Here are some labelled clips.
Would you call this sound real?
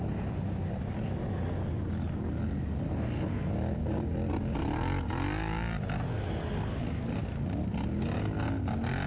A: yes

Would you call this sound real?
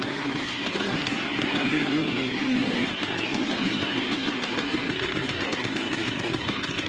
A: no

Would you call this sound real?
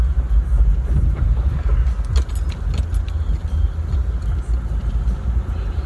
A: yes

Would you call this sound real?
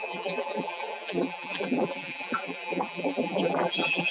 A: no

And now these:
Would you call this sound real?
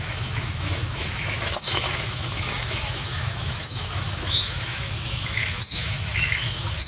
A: no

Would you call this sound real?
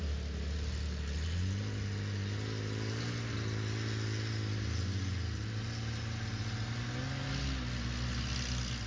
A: yes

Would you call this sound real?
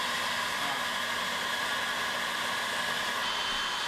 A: yes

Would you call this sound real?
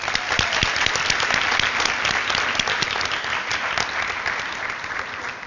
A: yes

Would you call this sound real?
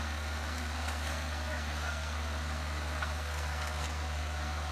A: no